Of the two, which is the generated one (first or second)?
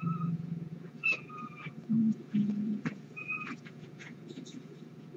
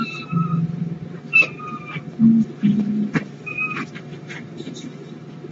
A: first